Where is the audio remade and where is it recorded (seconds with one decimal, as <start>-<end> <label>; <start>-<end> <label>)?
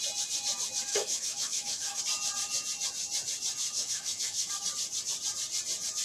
0.0-0.9 recorded; 0.9-2.0 remade; 2.0-3.6 recorded; 3.6-4.5 remade; 4.5-6.0 recorded